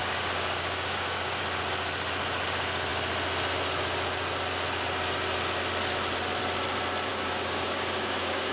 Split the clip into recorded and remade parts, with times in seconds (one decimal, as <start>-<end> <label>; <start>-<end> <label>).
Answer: 0.0-1.4 remade; 1.4-7.1 recorded; 7.1-8.5 remade